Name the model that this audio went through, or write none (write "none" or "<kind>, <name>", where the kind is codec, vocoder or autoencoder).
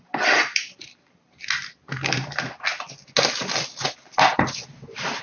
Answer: none